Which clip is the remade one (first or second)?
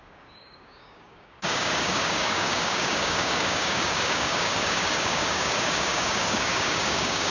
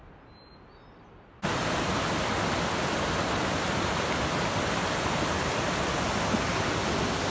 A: first